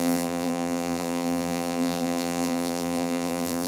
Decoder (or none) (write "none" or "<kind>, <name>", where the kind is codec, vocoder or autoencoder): vocoder, BigVGAN v2